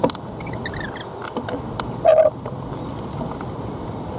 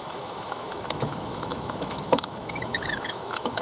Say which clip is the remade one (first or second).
second